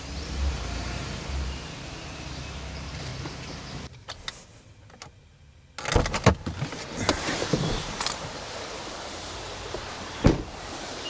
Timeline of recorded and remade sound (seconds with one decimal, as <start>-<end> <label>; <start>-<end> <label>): 0.0-3.1 remade; 3.1-7.2 recorded; 7.2-11.1 remade